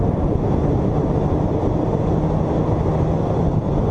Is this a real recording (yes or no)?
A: yes